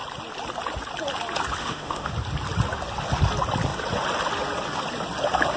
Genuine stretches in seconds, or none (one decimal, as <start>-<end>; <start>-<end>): 0.0-1.6; 2.1-5.6